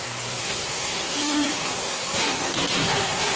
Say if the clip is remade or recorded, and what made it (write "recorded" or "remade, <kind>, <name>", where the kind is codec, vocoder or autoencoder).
remade, codec, SNAC